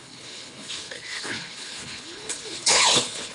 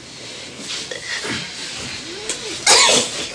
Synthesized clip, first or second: first